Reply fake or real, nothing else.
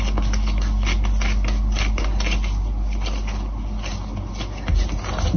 real